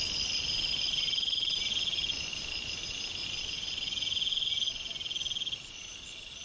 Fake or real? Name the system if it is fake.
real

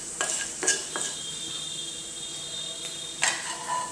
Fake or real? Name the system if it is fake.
real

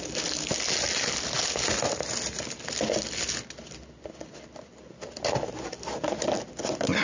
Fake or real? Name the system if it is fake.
real